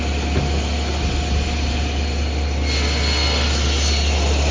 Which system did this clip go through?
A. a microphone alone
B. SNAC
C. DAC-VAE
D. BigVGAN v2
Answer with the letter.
A